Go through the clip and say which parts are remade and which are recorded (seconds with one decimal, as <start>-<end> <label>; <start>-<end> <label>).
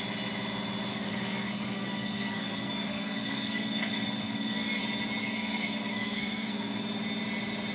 0.0-0.9 recorded; 0.9-4.8 remade; 4.8-5.2 recorded; 5.2-6.8 remade; 6.8-7.7 recorded